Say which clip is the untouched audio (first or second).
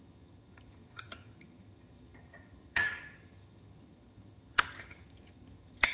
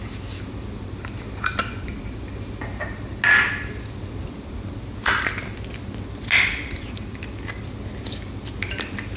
second